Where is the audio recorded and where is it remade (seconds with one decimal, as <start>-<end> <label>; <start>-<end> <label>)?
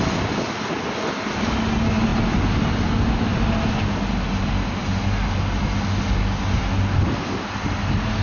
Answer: 0.0-8.2 recorded